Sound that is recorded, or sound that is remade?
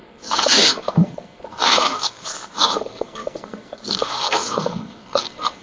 remade